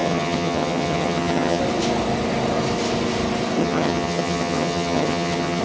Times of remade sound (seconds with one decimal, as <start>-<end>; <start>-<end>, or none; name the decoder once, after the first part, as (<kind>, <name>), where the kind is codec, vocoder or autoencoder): 0.0-1.6 (vocoder, HiFi-GAN); 3.6-5.6